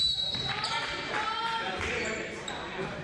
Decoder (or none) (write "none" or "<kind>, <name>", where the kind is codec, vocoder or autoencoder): vocoder, BigVGAN v2